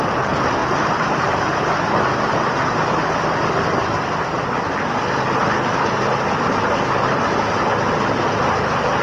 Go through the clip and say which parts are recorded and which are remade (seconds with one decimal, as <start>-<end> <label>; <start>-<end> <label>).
0.0-9.0 recorded